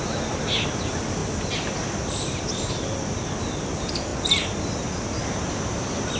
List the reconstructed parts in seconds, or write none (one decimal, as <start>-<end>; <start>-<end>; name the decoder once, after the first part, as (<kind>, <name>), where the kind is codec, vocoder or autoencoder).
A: none